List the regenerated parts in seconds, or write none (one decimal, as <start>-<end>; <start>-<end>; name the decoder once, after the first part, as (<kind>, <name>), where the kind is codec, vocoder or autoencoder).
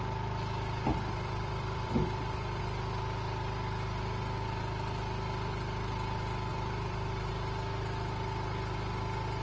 0.9-2.6 (vocoder, BigVGAN v2); 6.5-7.3